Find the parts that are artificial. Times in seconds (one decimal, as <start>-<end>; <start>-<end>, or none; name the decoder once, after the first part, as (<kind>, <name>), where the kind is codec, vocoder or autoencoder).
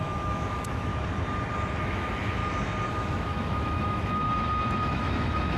0.0-0.9 (autoencoder, DAC-VAE); 1.8-2.4; 2.9-4.2; 4.8-5.6